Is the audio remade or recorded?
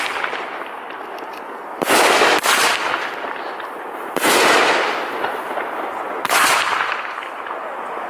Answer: recorded